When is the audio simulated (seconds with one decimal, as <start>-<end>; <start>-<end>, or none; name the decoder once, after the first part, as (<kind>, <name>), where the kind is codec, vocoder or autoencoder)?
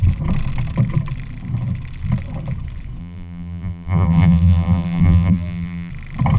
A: 3.0-5.9 (vocoder, BigVGAN v2)